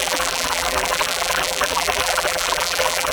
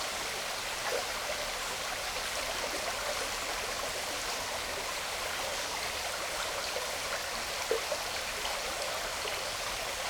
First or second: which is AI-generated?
first